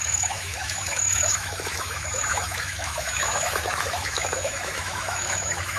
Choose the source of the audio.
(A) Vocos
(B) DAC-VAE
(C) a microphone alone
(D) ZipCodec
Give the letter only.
B